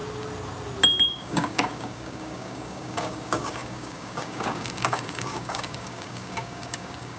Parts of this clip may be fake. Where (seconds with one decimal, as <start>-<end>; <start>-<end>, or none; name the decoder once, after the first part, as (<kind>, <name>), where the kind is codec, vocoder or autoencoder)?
1.0-7.2 (codec, DAC)